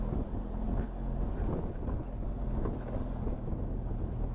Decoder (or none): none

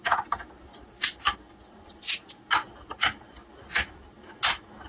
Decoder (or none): none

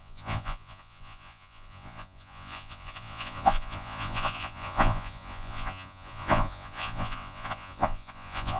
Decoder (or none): vocoder, Vocos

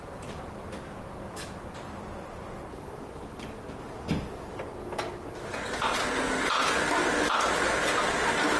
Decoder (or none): none